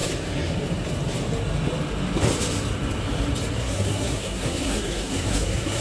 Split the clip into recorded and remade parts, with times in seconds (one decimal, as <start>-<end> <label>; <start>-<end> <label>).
0.0-3.5 recorded; 3.5-5.8 remade

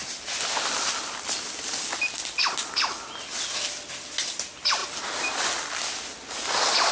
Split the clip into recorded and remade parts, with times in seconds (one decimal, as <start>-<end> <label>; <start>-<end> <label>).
0.0-6.9 recorded

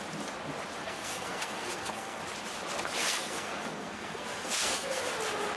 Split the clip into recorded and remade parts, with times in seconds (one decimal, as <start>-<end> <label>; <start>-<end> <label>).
0.0-0.8 recorded; 0.8-2.2 remade; 2.2-3.0 recorded; 3.0-5.0 remade; 5.0-5.6 recorded

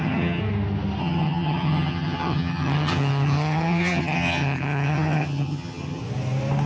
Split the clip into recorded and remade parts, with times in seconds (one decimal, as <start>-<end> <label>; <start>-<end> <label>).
0.0-0.4 remade; 0.4-1.0 recorded; 1.0-6.0 remade; 6.0-6.7 recorded

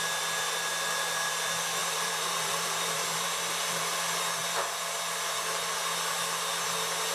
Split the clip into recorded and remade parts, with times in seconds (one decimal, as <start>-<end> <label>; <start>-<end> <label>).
0.0-1.8 recorded; 1.8-4.0 remade; 4.0-7.1 recorded

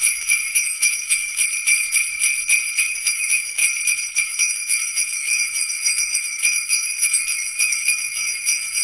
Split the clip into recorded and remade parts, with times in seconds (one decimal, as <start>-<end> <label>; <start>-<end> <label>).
0.0-1.4 remade; 1.4-2.8 recorded; 2.8-3.6 remade; 3.6-4.2 recorded; 4.2-8.8 remade

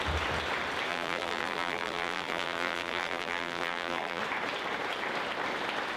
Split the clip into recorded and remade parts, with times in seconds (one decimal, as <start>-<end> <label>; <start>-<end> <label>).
0.0-0.9 recorded; 0.9-4.2 remade; 4.2-6.0 recorded